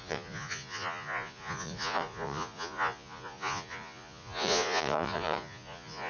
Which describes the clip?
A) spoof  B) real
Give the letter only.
A